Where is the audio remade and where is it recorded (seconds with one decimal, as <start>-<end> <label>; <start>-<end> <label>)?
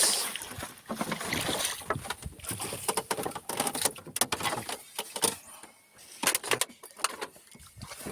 0.0-8.1 recorded